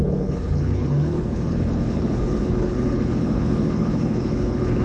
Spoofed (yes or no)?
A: yes